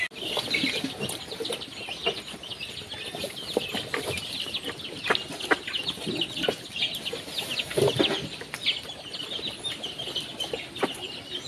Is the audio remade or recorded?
recorded